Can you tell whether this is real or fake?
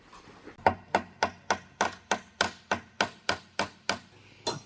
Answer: real